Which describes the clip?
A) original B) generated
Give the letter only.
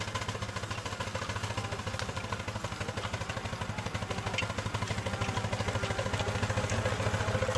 A